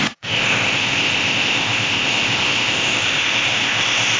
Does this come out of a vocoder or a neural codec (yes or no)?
yes